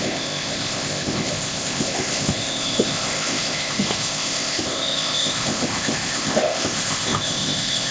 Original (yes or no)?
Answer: no